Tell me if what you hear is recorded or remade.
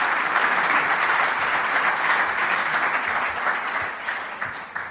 recorded